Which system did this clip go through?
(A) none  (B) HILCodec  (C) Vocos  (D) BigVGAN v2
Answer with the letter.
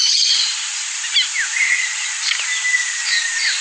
A